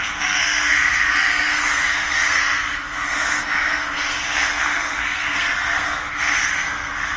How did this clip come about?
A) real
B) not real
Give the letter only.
B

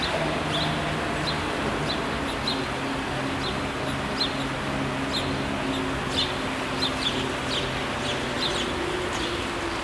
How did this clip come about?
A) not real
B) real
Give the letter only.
B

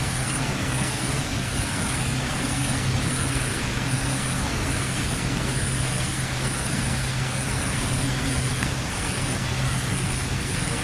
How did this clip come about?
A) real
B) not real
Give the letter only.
B